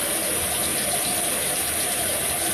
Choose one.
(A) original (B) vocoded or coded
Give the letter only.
A